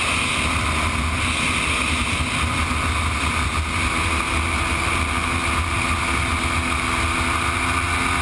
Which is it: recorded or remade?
recorded